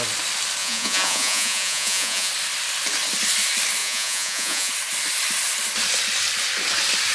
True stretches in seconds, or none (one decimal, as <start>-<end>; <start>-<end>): 0.0-0.6; 2.3-3.8; 4.7-7.1